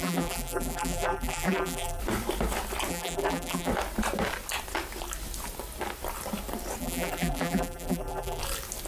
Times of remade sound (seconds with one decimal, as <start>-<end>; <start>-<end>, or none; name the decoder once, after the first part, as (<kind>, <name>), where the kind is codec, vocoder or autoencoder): 0.0-2.0 (vocoder, BigVGAN v2); 2.9-3.7; 6.8-8.4